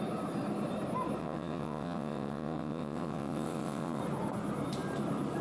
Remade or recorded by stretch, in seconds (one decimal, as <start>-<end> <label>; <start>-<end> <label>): 0.0-1.2 recorded; 1.2-4.0 remade; 4.0-5.4 recorded